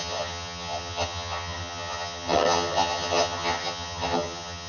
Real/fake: fake